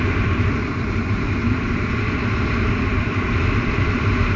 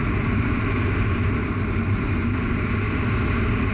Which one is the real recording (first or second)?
second